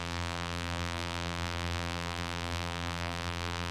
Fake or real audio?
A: fake